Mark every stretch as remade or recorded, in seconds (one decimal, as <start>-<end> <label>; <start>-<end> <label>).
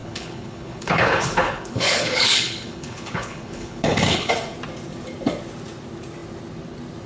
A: 0.0-4.3 remade; 4.3-7.1 recorded